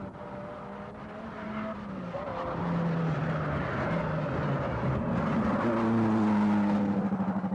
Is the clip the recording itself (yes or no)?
yes